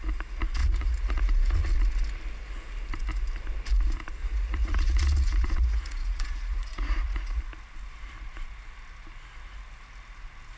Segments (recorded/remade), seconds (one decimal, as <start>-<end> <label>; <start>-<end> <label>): 0.0-0.6 recorded; 0.6-1.7 remade; 1.7-4.2 recorded; 4.2-7.4 remade; 7.4-10.6 recorded